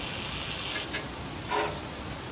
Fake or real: real